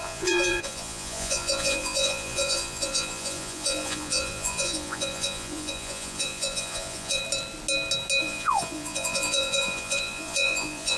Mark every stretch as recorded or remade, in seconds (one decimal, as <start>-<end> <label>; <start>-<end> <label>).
0.0-7.2 remade; 7.2-8.2 recorded; 8.2-11.0 remade